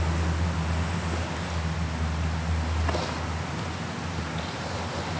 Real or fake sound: real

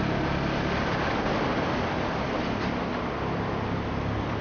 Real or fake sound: real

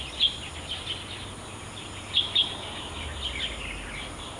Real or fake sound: real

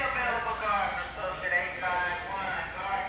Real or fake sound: real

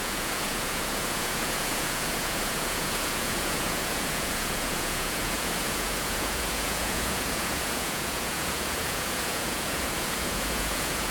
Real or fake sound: fake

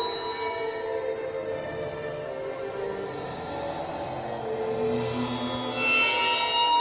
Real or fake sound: real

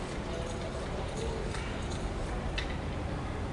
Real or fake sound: real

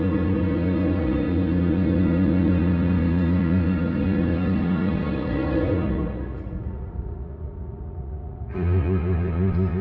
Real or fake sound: fake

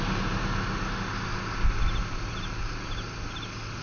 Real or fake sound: real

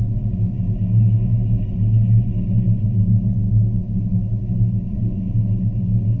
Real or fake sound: real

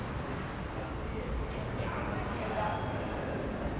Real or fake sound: real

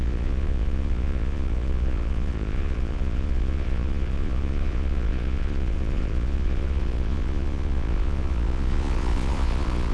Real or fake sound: fake